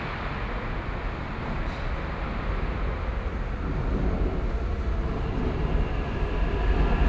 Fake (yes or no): no